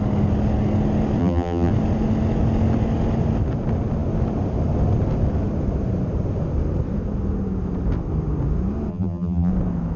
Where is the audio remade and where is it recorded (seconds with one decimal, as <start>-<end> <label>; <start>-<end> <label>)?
0.0-1.2 recorded; 1.2-1.7 remade; 1.7-8.9 recorded; 8.9-9.5 remade; 9.5-10.0 recorded